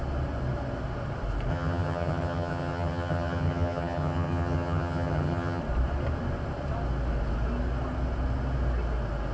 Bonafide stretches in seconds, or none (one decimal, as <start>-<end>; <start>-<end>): 0.0-1.5; 5.6-9.3